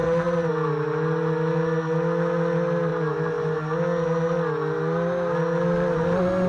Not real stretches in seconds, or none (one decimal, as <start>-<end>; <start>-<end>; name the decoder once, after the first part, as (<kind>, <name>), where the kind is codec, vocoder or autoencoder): 2.9-3.8 (vocoder, BigVGAN v2)